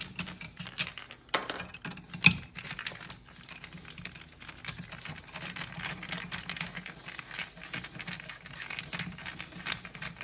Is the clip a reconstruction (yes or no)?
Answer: no